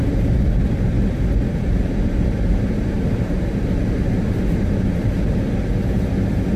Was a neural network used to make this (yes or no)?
no